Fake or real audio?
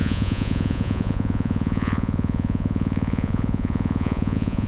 fake